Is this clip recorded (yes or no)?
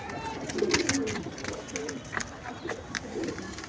yes